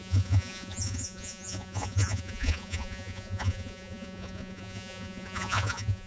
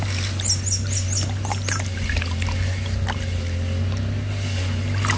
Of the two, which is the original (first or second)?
second